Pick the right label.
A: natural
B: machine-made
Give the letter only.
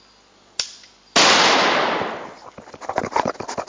A